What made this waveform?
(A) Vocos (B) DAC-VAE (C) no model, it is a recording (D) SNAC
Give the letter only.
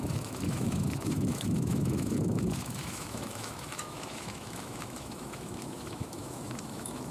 B